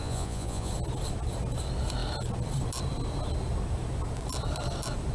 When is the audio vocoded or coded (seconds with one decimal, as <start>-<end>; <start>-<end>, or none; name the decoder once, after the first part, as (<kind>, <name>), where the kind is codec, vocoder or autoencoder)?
0.0-0.7 (vocoder, Vocos)